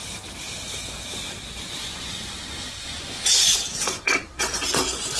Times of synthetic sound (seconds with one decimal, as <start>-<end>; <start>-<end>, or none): 1.8-5.2